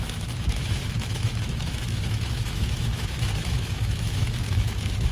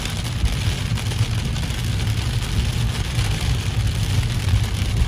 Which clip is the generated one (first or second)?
first